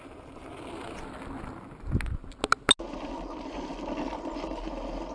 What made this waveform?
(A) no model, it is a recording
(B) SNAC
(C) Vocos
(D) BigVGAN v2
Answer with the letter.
A